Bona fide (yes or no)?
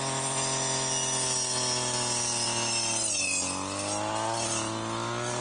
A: yes